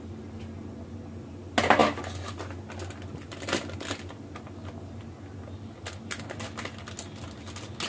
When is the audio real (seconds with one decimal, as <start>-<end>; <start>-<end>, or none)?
0.0-7.9